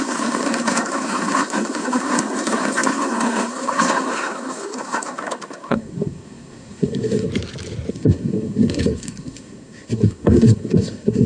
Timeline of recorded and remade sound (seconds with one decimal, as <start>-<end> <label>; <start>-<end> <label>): 0.0-7.3 remade; 7.3-7.9 recorded; 7.9-11.3 remade

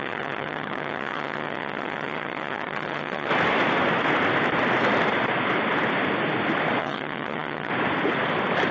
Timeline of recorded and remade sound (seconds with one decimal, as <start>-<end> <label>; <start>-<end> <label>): 0.0-3.3 remade; 3.3-6.8 recorded; 6.8-7.7 remade; 7.7-8.7 recorded

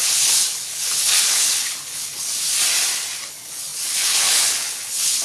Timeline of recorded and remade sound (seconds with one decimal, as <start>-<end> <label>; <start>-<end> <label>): 0.0-2.3 remade; 2.3-3.3 recorded; 3.3-5.2 remade

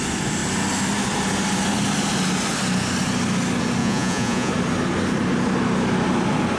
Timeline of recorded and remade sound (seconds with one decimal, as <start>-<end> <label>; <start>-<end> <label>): 0.0-3.8 recorded; 3.8-4.5 remade; 4.5-6.6 recorded

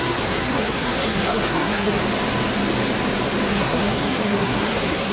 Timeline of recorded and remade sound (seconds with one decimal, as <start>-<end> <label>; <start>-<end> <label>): 0.0-2.0 remade; 2.0-3.5 recorded; 3.5-5.1 remade

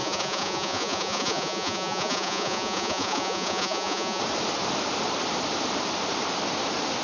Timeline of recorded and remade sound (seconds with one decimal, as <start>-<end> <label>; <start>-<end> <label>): 0.0-4.2 remade; 4.2-7.0 recorded

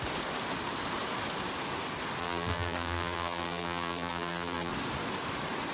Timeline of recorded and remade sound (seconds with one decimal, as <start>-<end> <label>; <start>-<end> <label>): 0.0-2.2 recorded; 2.2-4.7 remade; 4.7-5.7 recorded